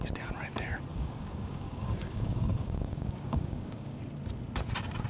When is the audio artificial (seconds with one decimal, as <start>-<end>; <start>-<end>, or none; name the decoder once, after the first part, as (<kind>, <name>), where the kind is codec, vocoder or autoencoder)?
0.9-4.0 (codec, DAC)